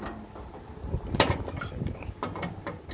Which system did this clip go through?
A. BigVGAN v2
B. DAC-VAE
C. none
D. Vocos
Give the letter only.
C